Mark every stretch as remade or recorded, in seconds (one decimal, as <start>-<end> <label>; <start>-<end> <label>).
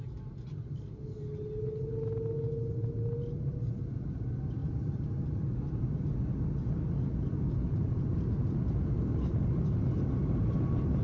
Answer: 0.0-4.6 recorded; 4.6-6.0 remade; 6.0-11.0 recorded